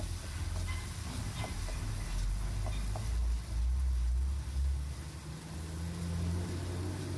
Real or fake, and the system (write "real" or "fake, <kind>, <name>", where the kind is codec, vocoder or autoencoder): real